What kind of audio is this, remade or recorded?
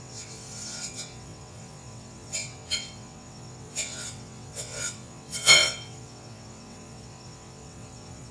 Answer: remade